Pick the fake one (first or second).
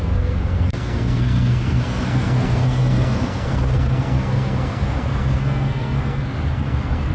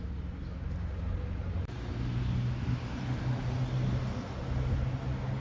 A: first